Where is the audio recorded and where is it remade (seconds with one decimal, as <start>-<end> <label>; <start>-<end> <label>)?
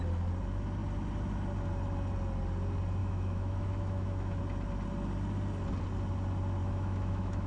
0.0-3.0 recorded; 3.0-4.4 remade; 4.4-6.6 recorded; 6.6-7.5 remade